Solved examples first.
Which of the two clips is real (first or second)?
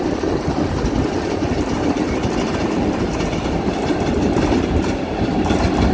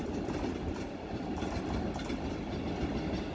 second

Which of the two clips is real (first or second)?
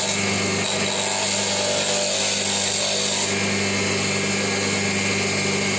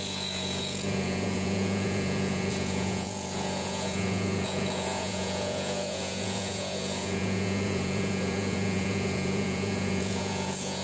first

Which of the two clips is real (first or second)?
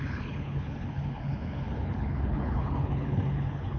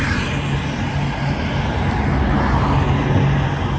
second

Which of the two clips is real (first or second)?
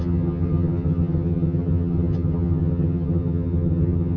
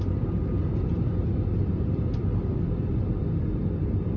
second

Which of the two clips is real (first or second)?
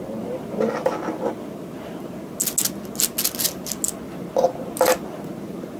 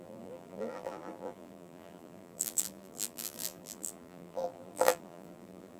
first